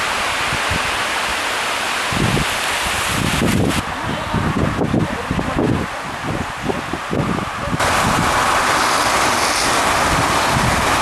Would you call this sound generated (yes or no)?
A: no